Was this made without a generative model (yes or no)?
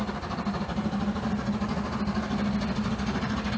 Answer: yes